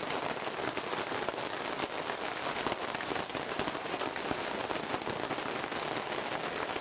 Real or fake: real